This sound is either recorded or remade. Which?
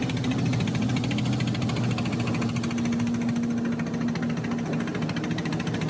recorded